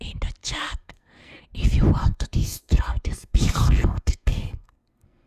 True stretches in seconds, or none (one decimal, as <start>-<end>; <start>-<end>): 0.0-0.4; 1.4-2.0